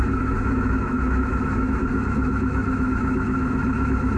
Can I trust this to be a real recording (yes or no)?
no